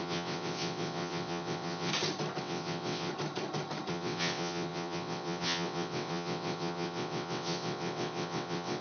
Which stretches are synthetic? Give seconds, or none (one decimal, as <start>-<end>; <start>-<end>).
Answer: 0.0-1.9; 2.4-3.1; 3.9-8.8